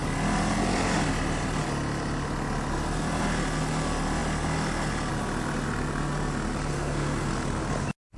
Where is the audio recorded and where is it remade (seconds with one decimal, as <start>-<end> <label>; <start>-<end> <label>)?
0.0-6.7 recorded; 6.7-7.3 remade; 7.3-8.2 recorded